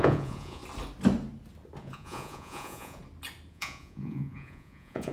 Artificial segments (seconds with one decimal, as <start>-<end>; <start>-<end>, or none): 0.0-0.6; 1.8-3.0; 3.5-5.1